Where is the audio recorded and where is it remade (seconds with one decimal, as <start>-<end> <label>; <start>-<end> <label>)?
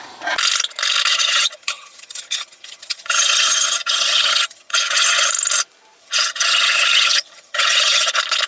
0.0-1.1 recorded; 1.1-5.3 remade; 5.3-6.0 recorded; 6.0-8.1 remade; 8.1-8.5 recorded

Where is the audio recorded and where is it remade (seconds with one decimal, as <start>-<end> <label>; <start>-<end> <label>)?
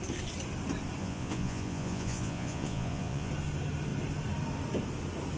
0.0-1.0 recorded; 1.0-3.3 remade; 3.3-5.4 recorded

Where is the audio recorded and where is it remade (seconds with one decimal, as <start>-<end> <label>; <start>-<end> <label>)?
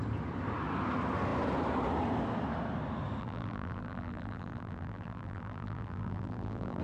0.0-3.2 recorded; 3.2-6.8 remade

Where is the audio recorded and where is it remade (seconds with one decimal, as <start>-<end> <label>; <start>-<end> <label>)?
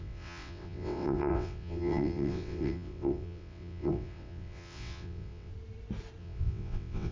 0.0-5.5 remade; 5.5-6.2 recorded; 6.2-7.1 remade